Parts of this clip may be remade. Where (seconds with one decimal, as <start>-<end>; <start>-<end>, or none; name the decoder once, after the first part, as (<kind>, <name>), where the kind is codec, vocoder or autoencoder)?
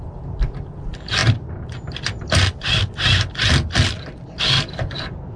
none